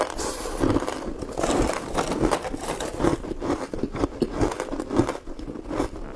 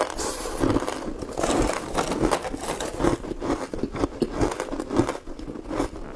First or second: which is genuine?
second